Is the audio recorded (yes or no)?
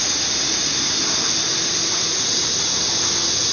yes